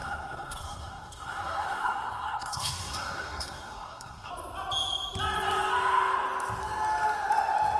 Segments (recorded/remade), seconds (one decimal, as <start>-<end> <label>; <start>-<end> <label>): 0.0-4.3 remade; 4.3-7.8 recorded